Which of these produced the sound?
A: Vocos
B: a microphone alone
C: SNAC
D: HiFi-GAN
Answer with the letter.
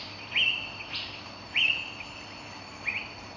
B